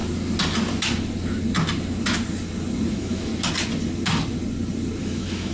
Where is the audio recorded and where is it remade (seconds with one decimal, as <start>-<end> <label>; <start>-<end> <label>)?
0.0-2.9 recorded; 2.9-3.3 remade; 3.3-5.0 recorded; 5.0-5.5 remade